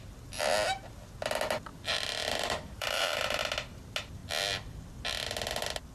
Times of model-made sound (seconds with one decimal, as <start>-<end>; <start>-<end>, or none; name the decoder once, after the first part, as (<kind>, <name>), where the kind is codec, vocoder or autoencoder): 1.7-3.4 (vocoder, BigVGAN v2)